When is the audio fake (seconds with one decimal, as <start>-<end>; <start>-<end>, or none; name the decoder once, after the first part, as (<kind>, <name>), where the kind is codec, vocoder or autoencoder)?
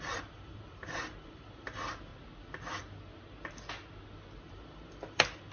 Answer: 0.0-2.1 (vocoder, BigVGAN v2); 4.3-5.5